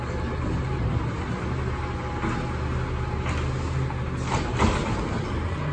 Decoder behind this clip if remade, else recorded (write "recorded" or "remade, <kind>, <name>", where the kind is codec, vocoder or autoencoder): recorded